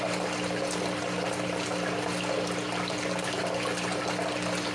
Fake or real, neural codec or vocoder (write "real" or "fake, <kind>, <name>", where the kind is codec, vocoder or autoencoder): real